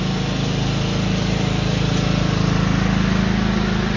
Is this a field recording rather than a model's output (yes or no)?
yes